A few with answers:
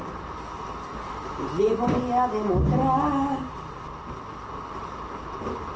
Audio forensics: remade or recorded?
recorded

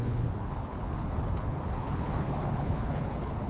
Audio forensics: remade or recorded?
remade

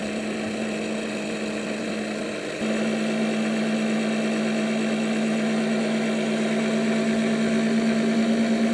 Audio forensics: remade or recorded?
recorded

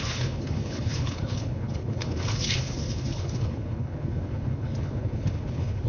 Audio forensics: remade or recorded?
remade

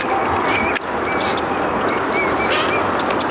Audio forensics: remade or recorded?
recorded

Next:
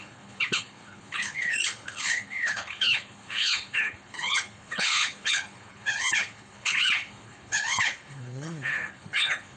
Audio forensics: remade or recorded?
remade